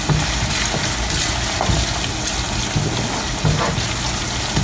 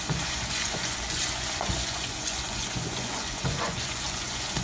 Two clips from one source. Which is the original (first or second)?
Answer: first